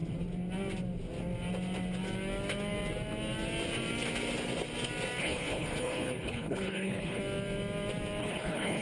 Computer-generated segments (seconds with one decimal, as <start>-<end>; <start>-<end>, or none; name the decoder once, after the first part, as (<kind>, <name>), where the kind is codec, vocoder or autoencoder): 5.2-7.2 (codec, HILCodec); 8.2-8.8